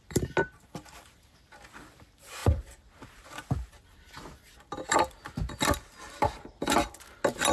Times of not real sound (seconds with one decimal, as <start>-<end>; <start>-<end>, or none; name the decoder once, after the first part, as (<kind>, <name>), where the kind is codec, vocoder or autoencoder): none